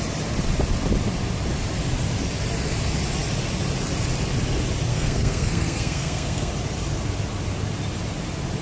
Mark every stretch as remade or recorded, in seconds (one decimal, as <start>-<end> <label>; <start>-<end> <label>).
0.0-4.9 recorded; 4.9-6.5 remade; 6.5-8.6 recorded